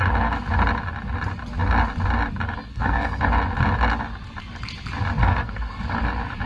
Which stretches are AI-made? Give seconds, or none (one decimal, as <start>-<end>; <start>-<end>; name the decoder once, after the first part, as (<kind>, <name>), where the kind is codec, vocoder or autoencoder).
2.7-3.2 (codec, SNAC); 5.2-5.8